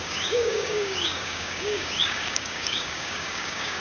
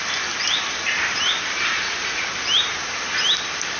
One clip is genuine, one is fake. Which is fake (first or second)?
first